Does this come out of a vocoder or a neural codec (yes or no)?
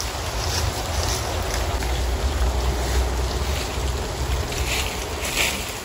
no